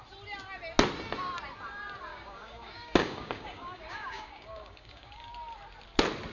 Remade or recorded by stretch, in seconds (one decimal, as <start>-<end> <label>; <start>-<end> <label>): 0.0-2.1 recorded; 2.1-5.3 remade; 5.3-6.3 recorded